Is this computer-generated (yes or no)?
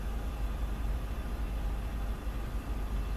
no